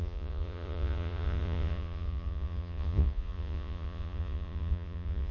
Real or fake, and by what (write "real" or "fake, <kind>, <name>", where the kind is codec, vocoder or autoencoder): fake, vocoder, Vocos